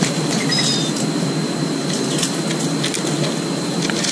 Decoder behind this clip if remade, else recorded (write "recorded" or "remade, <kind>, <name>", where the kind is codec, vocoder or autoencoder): recorded